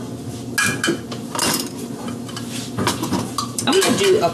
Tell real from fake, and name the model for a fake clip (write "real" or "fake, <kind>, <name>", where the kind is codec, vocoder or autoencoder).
real